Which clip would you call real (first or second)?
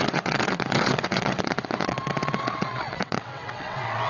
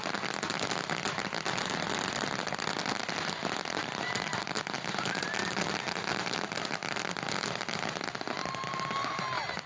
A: second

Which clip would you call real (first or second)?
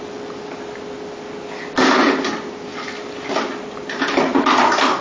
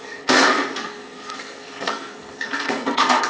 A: first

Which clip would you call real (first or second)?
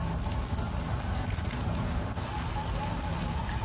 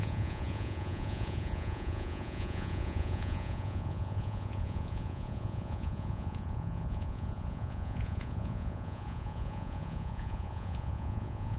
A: first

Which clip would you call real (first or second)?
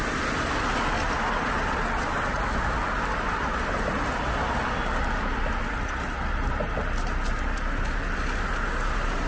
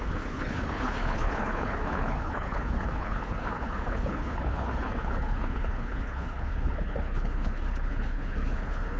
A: first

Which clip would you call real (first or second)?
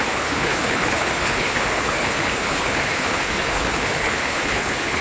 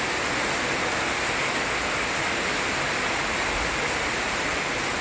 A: second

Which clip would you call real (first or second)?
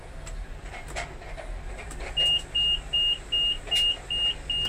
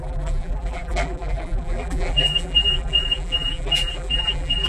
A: first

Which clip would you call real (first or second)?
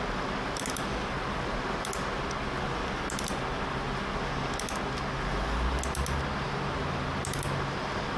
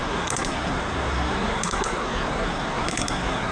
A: first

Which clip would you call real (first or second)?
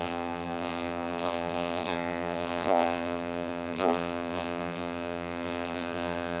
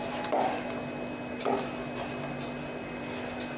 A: second